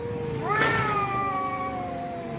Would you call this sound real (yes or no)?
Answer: yes